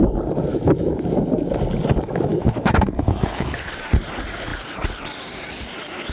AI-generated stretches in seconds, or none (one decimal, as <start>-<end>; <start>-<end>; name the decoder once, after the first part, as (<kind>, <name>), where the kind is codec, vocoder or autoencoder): 0.5-1.0 (autoencoder, DAC-VAE); 2.3-3.5